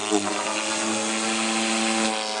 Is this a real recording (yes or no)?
yes